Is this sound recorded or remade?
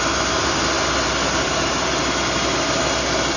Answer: recorded